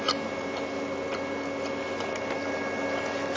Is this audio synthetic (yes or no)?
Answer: no